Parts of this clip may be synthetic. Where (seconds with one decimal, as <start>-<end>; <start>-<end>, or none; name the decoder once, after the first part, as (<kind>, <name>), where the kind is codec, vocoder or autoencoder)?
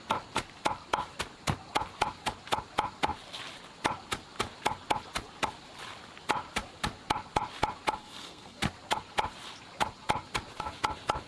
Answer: 8.0-8.6 (codec, SNAC)